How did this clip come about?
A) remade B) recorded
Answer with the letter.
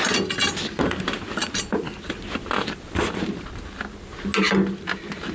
B